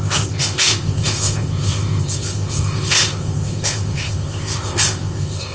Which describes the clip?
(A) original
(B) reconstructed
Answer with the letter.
B